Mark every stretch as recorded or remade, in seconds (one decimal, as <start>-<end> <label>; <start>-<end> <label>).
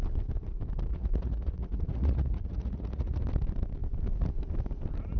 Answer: 0.0-0.9 recorded; 0.9-3.2 remade; 3.2-5.2 recorded